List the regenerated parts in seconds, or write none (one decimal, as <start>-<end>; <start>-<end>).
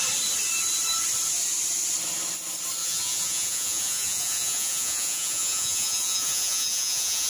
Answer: 2.8-7.3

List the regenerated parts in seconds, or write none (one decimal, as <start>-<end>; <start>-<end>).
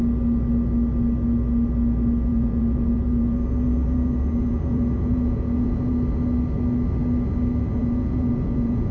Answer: 2.3-5.9; 7.8-8.9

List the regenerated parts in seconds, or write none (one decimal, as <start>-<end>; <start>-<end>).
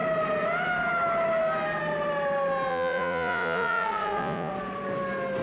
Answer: 2.7-4.5